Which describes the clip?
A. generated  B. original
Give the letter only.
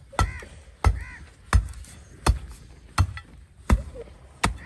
B